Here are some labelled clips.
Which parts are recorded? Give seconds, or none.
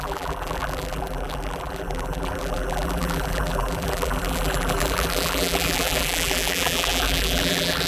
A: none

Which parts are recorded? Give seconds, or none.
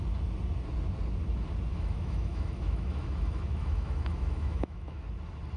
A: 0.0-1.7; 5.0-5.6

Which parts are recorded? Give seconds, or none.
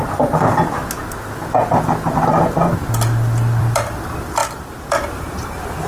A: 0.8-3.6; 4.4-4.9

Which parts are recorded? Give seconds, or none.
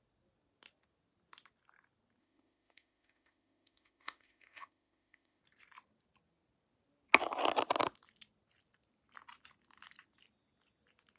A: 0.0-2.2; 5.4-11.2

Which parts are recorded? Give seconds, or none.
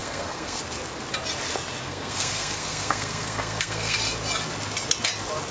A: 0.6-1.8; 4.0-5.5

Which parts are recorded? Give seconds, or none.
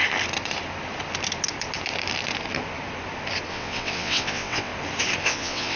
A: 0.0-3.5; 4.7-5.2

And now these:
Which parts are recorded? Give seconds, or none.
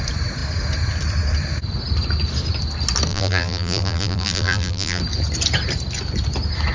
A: 0.0-3.1; 5.0-6.7